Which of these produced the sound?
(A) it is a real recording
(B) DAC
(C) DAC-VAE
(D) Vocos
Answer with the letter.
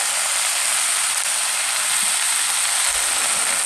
A